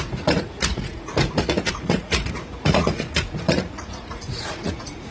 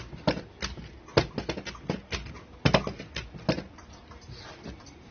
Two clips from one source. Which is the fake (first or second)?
first